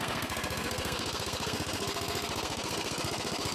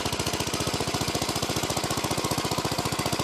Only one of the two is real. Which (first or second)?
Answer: second